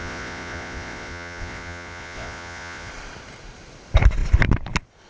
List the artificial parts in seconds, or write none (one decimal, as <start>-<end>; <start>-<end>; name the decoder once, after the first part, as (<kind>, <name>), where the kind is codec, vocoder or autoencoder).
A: 0.0-2.9 (vocoder, Vocos)